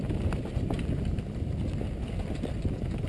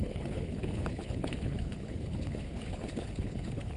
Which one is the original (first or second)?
first